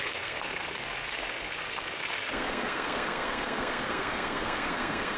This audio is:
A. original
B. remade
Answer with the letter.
B